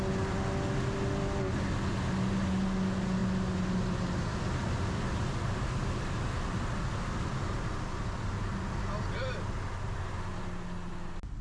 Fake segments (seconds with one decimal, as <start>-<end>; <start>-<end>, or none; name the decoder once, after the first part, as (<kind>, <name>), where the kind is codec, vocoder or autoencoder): none